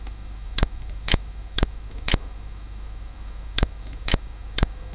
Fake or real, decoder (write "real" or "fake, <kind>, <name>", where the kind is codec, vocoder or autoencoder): fake, autoencoder, DAC-VAE